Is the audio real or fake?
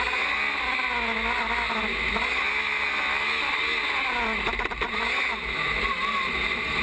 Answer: real